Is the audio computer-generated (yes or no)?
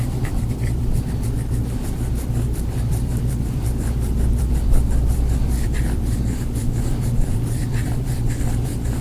yes